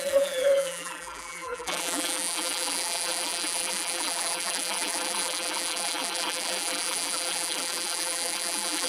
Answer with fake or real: fake